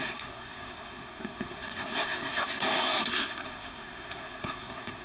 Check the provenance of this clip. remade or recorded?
remade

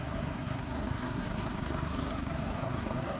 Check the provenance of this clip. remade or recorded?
remade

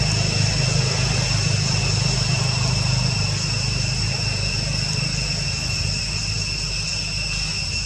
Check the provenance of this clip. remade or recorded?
recorded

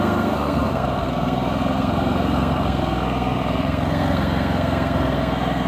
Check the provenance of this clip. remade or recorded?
remade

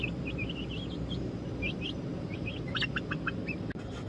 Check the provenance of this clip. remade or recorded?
recorded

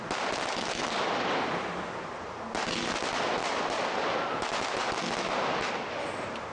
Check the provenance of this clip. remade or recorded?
recorded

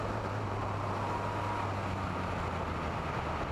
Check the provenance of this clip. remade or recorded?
recorded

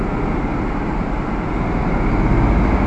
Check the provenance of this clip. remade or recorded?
recorded